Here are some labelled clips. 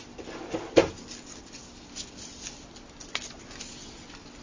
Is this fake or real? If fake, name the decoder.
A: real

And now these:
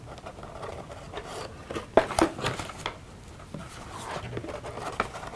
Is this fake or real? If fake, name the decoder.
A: real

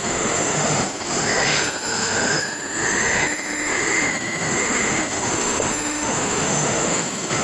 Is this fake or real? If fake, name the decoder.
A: fake, autoencoder, DAC-VAE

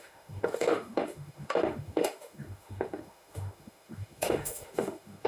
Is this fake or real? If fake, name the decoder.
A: fake, autoencoder, DAC-VAE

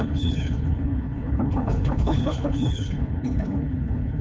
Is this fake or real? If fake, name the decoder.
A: fake, codec, HILCodec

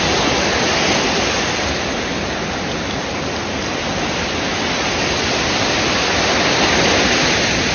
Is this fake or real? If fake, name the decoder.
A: real